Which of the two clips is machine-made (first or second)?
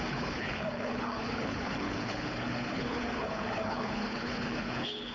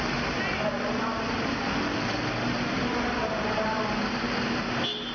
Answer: first